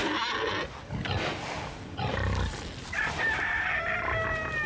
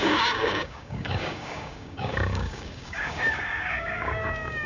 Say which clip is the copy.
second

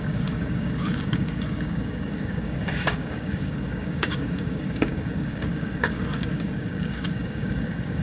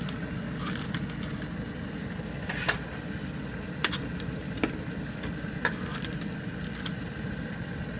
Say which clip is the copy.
first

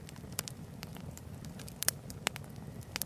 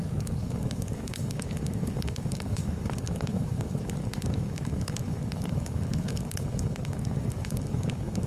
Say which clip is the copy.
second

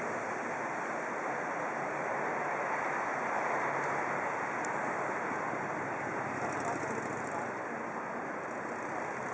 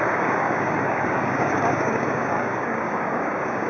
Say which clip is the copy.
second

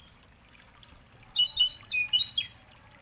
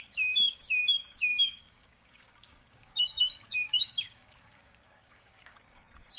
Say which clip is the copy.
second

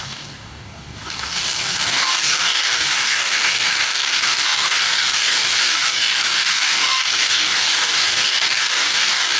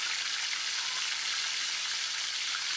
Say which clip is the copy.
first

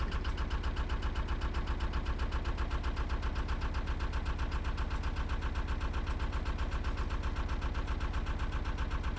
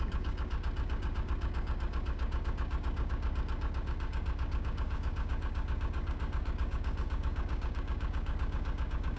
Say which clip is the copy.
second